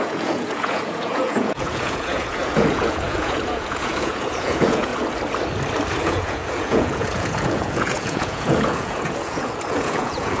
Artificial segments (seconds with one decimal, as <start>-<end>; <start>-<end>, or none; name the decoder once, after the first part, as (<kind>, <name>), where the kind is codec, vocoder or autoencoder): 0.0-4.9 (vocoder, Vocos); 6.0-10.4